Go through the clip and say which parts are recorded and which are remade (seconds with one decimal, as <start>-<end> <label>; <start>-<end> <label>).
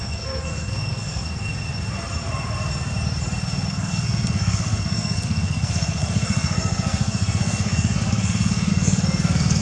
0.0-1.5 remade; 1.5-3.7 recorded; 3.7-9.6 remade